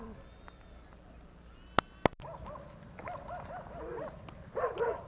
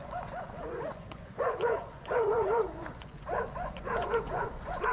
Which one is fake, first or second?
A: second